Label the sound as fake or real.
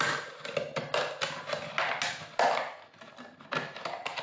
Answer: real